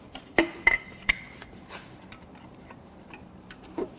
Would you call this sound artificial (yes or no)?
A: yes